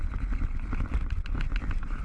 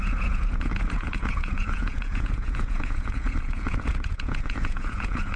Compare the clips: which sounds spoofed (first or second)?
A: second